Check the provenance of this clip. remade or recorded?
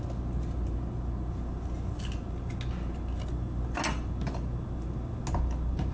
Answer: recorded